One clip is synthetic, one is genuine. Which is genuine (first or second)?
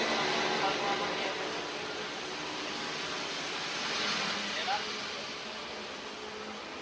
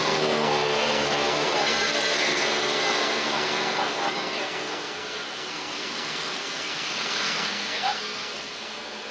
first